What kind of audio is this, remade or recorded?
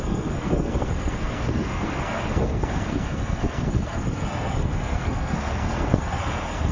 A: remade